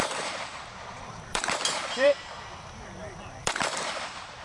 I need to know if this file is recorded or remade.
remade